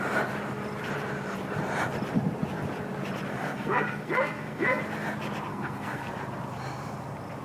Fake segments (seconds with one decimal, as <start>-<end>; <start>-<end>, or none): 3.3-4.8; 5.5-6.1